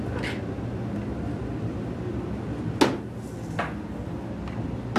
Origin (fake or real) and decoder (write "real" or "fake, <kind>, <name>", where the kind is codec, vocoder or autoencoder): real